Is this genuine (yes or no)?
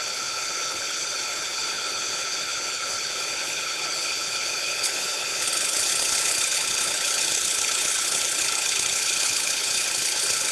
no